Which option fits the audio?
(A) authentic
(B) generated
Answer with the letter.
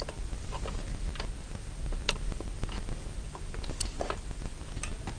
A